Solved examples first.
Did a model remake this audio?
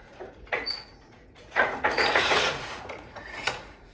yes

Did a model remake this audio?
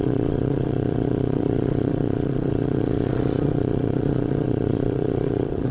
yes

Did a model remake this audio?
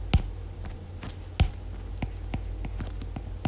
no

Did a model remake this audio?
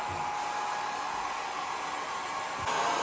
no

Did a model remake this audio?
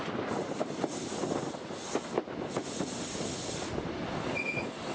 no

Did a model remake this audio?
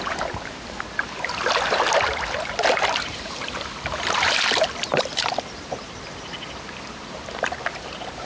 no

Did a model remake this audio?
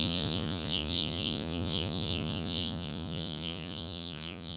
yes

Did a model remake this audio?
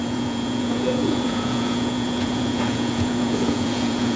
yes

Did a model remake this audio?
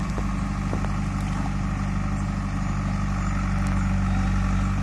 no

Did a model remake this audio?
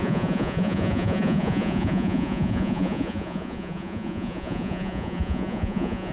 yes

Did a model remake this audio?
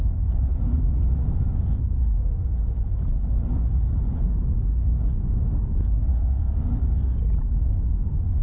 no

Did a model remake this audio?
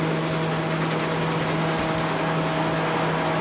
no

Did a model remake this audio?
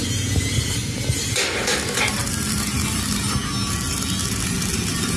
no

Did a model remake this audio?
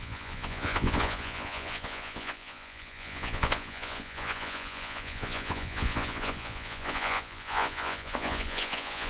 yes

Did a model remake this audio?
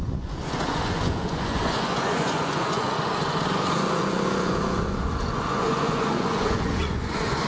yes